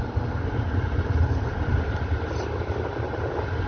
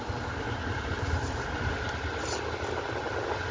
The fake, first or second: first